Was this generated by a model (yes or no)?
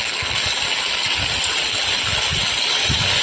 no